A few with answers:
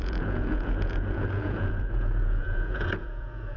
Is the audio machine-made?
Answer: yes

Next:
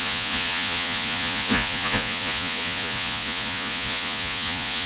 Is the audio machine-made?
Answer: yes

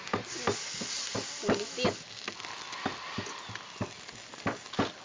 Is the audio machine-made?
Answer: no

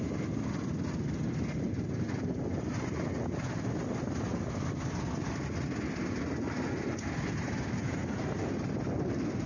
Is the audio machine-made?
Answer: no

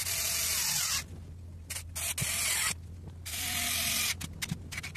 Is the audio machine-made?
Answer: no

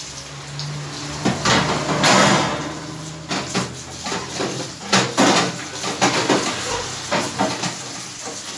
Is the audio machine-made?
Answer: no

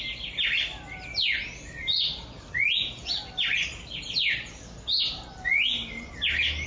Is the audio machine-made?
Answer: no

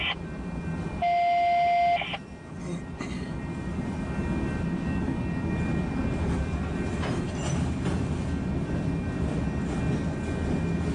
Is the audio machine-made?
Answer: no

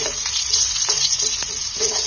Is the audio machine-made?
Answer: yes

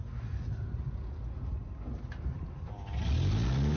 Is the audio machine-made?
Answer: no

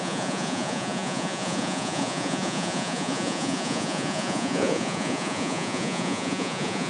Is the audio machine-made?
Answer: yes